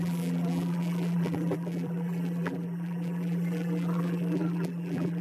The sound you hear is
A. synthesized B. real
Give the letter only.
A